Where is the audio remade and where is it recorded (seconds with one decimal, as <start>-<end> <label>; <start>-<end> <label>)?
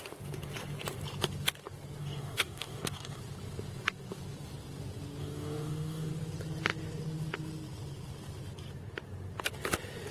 0.0-2.0 recorded; 2.0-3.2 remade; 3.2-5.2 recorded; 5.2-6.1 remade; 6.1-10.1 recorded